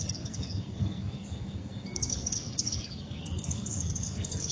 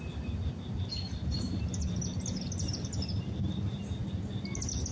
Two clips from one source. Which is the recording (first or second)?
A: second